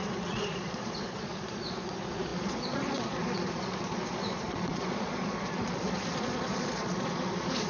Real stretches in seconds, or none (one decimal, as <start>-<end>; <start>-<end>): none